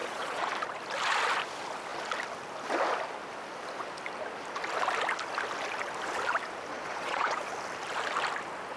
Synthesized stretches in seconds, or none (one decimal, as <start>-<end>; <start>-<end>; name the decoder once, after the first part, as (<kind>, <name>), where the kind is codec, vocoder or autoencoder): 0.0-0.5 (vocoder, Vocos); 6.7-7.5